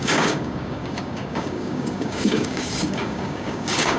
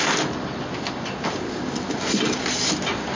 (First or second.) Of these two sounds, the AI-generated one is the first